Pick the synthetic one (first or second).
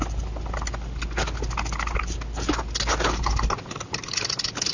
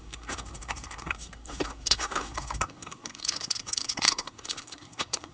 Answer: second